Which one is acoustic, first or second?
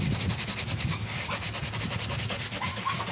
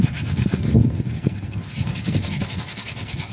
first